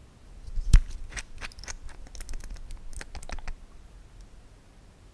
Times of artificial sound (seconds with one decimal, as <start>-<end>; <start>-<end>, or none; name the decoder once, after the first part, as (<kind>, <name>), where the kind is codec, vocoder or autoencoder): none